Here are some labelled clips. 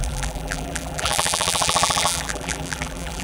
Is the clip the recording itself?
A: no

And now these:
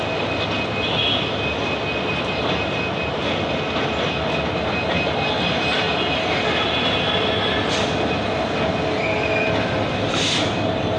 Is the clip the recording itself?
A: yes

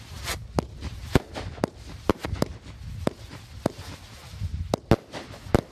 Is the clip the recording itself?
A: yes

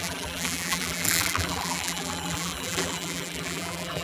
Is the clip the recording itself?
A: no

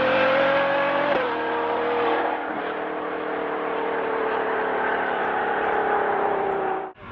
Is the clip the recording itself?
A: no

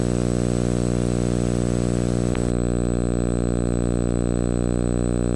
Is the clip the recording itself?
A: no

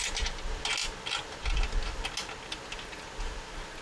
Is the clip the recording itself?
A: yes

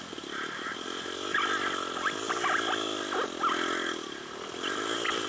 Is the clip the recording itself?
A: yes